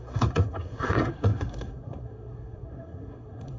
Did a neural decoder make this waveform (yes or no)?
yes